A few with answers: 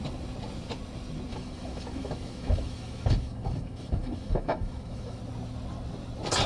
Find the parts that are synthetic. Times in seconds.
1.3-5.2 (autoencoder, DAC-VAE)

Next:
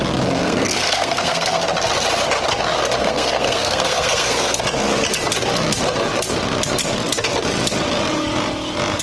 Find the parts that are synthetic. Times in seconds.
0.4-1.6 (codec, SNAC); 3.0-4.6

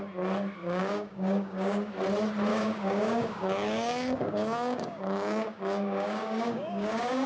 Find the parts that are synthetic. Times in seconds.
0.6-1.9 (codec, DAC); 2.5-7.3

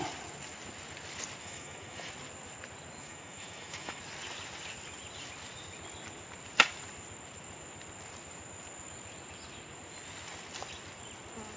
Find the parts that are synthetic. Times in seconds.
1.4-2.1 (autoencoder, DAC-VAE); 3.0-4.0

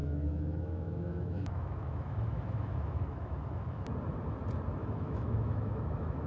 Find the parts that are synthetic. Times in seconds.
0.0-3.8 (autoencoder, DAC-VAE); 4.8-6.3

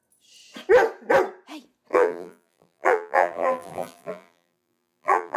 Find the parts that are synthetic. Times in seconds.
1.9-5.4 (vocoder, BigVGAN v2)

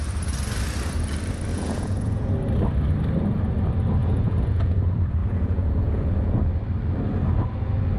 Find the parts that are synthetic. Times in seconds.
1.5-2.3 (vocoder, Vocos); 4.0-4.8; 5.2-6.4